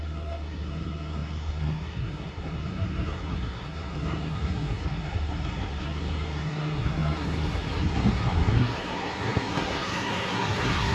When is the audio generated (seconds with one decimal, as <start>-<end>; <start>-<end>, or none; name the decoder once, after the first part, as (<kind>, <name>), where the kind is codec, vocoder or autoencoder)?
0.0-10.9 (codec, SNAC)